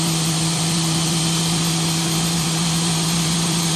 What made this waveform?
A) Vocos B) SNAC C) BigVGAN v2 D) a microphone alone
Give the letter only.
C